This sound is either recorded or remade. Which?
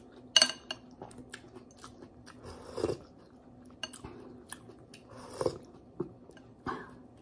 recorded